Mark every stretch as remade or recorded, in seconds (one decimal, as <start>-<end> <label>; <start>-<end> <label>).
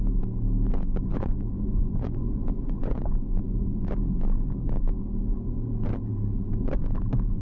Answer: 0.0-1.1 recorded; 1.1-3.9 remade; 3.9-7.4 recorded